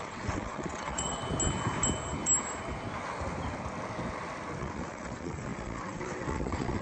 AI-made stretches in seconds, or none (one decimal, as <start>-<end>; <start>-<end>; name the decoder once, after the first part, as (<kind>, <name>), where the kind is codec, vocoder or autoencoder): 0.0-1.2 (vocoder, WaveNeXt); 4.6-6.8